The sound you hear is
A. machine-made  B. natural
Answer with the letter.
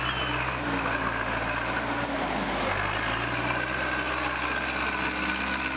B